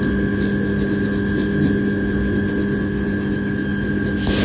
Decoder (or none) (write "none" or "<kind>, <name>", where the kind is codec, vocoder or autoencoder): none